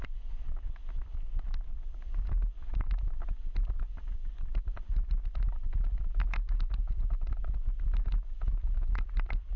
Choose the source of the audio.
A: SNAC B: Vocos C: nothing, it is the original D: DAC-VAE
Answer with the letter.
C